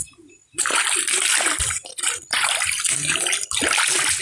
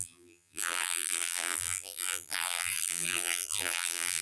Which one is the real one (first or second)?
first